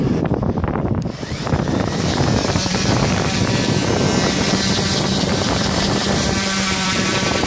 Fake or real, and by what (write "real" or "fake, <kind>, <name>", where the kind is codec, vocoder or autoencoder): fake, vocoder, BigVGAN v2